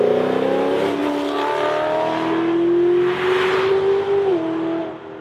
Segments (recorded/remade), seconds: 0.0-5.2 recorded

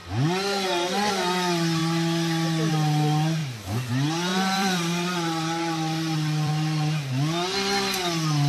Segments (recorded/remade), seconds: 0.0-4.3 recorded; 4.3-6.5 remade; 6.5-8.5 recorded

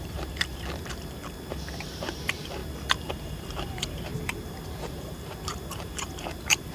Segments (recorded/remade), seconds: 0.0-0.5 remade; 0.5-1.8 recorded; 1.8-2.6 remade; 2.6-3.1 recorded; 3.1-6.7 remade